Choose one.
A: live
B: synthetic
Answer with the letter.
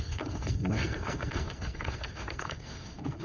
B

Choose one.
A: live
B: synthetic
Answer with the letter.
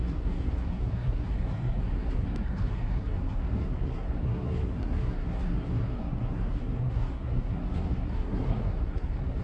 B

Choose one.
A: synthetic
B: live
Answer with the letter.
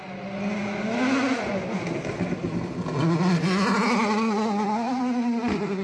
B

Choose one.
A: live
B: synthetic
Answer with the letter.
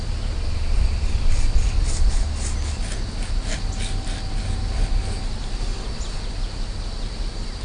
A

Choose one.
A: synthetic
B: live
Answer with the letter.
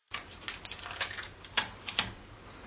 B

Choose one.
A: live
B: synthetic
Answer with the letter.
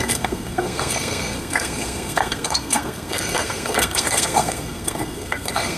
B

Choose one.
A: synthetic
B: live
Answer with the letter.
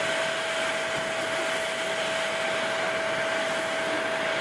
B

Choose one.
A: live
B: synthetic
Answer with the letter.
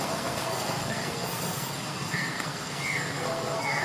B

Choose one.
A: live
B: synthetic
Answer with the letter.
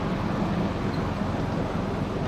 A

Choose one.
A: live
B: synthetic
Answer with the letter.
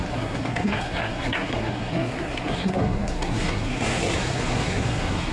B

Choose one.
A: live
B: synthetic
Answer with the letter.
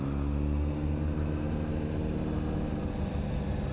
A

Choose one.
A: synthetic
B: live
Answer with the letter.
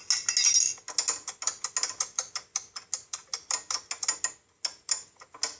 B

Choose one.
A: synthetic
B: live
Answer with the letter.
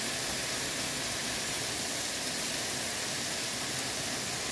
B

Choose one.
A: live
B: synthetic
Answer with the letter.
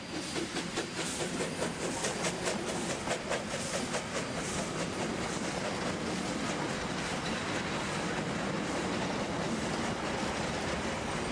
A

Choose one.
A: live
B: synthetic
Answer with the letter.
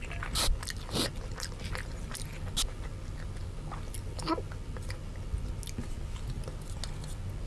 A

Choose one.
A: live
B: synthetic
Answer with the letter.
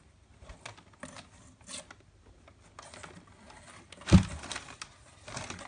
A